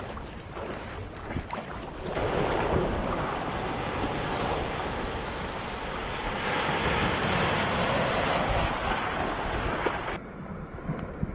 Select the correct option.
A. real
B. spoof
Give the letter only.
A